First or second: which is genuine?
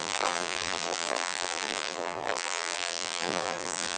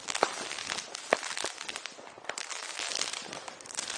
second